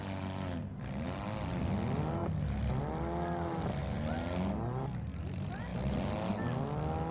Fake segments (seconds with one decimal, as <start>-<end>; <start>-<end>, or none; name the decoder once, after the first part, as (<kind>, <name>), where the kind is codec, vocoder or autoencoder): none